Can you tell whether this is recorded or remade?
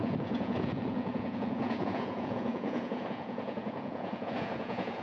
remade